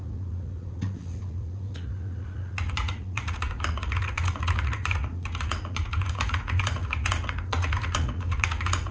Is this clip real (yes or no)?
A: no